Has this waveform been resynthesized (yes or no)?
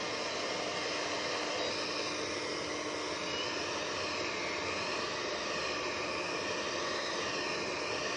no